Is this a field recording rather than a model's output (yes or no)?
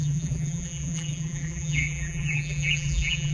no